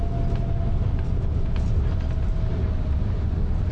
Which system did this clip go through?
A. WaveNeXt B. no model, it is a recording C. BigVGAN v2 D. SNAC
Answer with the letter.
B